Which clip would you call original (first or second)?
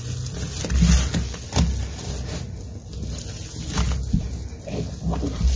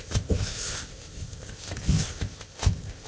first